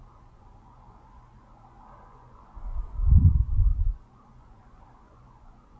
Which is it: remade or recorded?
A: remade